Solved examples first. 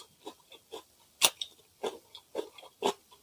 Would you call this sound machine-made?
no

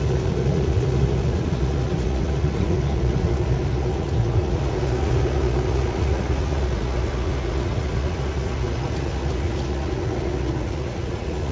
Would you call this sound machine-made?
yes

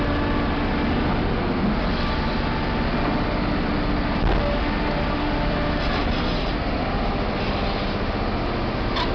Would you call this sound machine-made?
no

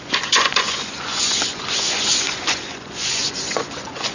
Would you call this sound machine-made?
yes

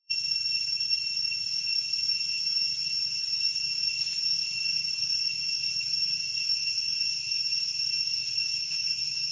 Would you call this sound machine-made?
yes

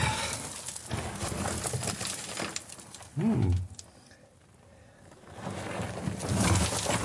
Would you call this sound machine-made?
no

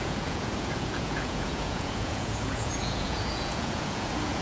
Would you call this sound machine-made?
yes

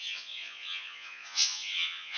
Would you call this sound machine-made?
yes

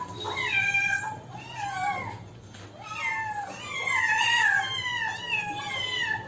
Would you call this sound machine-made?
no